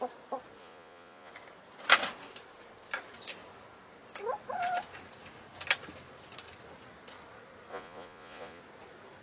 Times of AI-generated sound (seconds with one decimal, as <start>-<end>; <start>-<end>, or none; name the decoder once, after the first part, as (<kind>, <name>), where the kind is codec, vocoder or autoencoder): 0.6-1.3 (vocoder, Vocos); 7.7-8.6